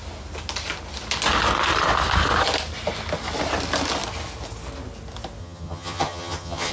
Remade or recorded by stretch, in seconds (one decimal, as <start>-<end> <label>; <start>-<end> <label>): 0.0-5.4 recorded; 5.4-6.7 remade